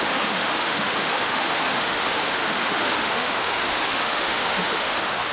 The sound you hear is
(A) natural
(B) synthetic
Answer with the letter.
B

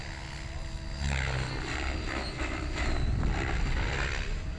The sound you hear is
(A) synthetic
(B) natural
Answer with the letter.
B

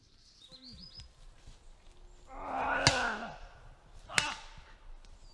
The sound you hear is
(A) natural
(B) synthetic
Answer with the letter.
A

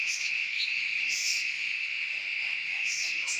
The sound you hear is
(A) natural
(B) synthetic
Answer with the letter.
B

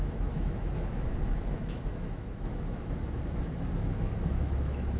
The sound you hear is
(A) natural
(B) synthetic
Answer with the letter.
B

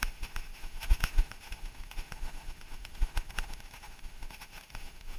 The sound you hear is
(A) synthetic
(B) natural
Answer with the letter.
A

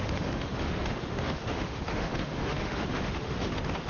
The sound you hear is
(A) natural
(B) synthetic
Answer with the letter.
B